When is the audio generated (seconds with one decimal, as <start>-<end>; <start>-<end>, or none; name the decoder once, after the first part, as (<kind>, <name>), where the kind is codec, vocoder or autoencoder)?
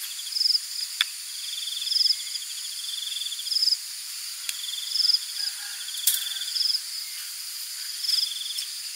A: 3.6-6.9 (vocoder, BigVGAN v2)